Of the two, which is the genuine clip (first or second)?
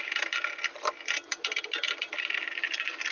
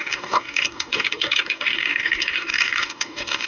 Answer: first